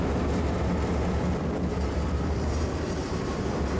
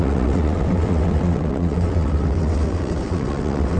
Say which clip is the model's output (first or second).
second